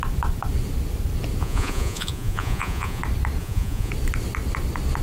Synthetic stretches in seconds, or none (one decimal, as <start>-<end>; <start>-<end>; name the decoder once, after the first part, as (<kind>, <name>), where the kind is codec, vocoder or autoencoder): 1.4-3.0 (vocoder, Vocos); 3.4-3.9